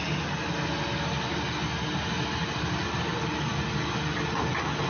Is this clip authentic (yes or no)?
yes